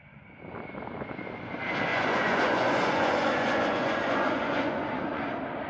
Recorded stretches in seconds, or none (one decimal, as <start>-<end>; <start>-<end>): 0.0-1.9; 5.3-5.7